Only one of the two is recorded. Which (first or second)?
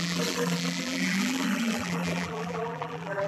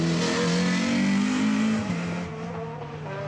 second